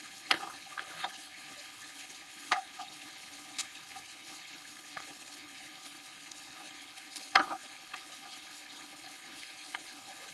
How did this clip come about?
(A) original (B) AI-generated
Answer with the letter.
B